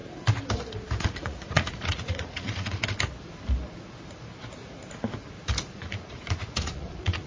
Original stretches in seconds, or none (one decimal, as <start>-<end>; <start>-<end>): 0.0-1.0; 2.8-5.7